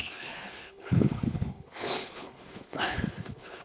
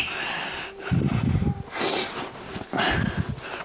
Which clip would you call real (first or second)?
second